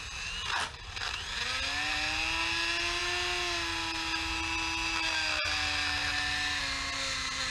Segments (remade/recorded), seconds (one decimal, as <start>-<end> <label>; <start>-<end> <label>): 0.0-7.5 recorded